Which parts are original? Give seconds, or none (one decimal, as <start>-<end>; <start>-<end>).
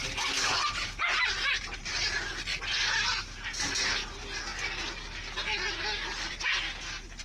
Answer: 1.9-7.2